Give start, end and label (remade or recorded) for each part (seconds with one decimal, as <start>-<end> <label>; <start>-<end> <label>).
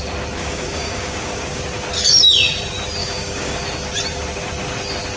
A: 0.0-0.4 recorded; 0.4-1.6 remade; 1.6-3.0 recorded; 3.0-3.6 remade; 3.6-5.2 recorded